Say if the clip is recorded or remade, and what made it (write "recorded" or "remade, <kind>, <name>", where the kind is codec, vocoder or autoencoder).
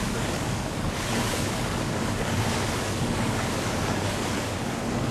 remade, codec, DAC